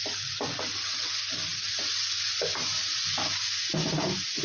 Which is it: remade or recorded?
recorded